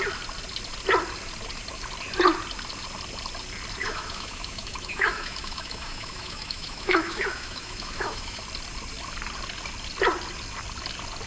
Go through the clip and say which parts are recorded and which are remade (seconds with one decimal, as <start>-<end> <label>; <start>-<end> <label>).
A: 0.0-3.8 recorded; 3.8-8.4 remade; 8.4-11.3 recorded